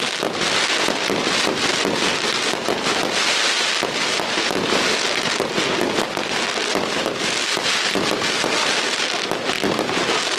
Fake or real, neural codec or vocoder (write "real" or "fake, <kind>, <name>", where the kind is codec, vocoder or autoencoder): real